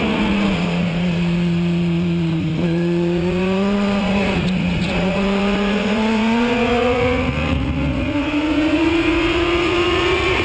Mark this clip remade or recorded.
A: remade